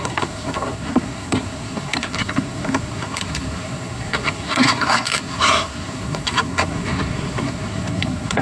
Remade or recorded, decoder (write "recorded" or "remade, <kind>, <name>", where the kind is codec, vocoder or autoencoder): remade, codec, SNAC